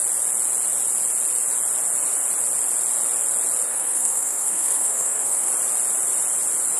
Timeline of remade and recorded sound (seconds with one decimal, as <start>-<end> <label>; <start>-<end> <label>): 0.0-3.7 recorded; 3.7-5.5 remade; 5.5-6.8 recorded